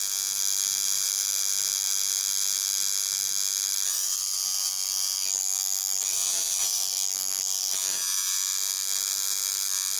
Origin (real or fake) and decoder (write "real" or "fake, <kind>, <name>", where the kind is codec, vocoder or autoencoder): real